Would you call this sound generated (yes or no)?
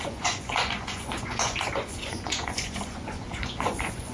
yes